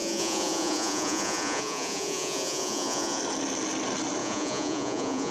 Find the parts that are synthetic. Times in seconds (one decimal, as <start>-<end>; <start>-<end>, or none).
0.0-3.2; 4.2-5.3